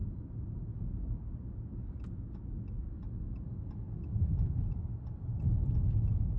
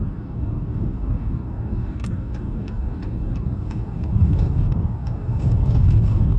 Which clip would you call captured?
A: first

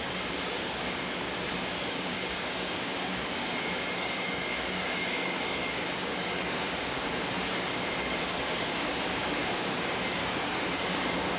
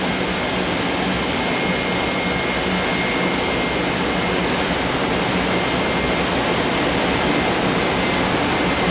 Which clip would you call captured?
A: second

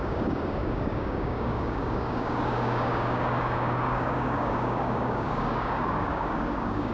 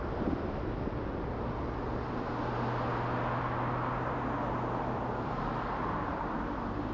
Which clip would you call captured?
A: second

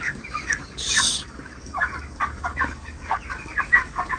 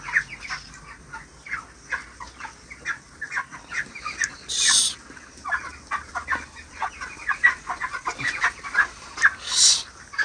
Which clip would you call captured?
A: second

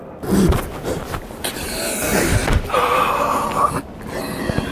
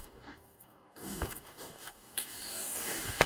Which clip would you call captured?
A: first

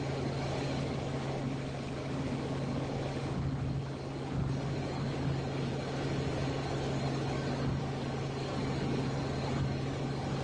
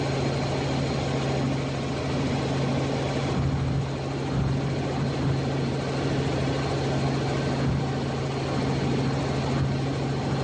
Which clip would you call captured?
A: second